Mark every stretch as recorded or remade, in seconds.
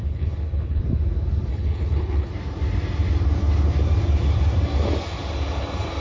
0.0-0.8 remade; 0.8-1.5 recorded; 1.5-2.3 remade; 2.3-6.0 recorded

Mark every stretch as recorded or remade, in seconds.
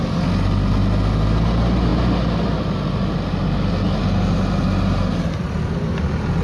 0.0-6.4 recorded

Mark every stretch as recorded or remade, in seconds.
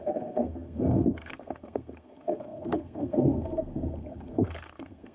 0.0-5.1 remade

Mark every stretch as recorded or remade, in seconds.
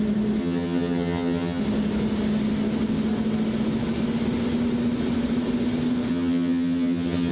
0.0-0.4 recorded; 0.4-1.6 remade; 1.6-6.1 recorded; 6.1-7.3 remade